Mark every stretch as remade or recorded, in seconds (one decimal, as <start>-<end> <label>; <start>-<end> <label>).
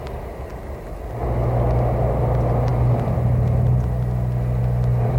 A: 0.0-5.2 recorded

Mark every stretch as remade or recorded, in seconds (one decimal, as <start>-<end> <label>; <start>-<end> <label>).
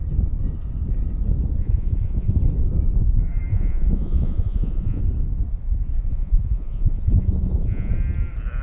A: 0.0-1.6 recorded; 1.6-2.4 remade; 2.4-3.5 recorded; 3.5-5.0 remade; 5.0-6.1 recorded; 6.1-7.9 remade; 7.9-8.6 recorded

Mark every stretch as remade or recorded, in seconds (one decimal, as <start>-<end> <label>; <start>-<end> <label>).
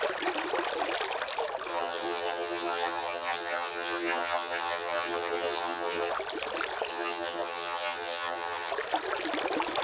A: 0.0-1.7 recorded; 1.7-6.1 remade; 6.1-6.9 recorded; 6.9-8.7 remade; 8.7-9.8 recorded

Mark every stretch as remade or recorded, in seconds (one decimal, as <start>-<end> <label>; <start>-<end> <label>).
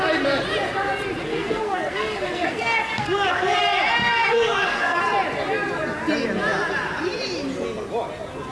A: 0.0-1.3 recorded; 1.3-3.6 remade; 3.6-4.0 recorded; 4.0-5.0 remade; 5.0-8.5 recorded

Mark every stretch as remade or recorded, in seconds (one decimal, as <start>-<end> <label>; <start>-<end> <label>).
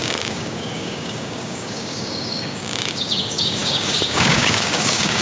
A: 0.0-5.2 remade